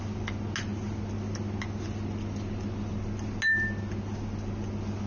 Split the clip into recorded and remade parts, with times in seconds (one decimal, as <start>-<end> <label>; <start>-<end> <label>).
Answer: 0.0-5.1 recorded